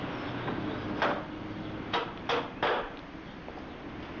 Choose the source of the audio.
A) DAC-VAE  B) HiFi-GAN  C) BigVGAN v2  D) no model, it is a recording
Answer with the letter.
D